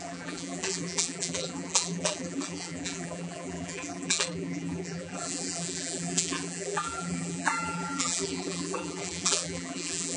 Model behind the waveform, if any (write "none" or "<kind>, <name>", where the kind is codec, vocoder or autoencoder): vocoder, BigVGAN v2